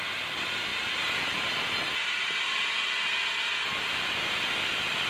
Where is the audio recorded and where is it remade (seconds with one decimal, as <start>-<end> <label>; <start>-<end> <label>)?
0.0-5.1 recorded